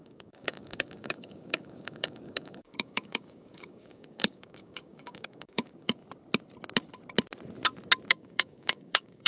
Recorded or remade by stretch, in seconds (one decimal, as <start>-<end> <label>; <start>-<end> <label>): 0.0-6.0 remade; 6.0-8.1 recorded; 8.1-9.3 remade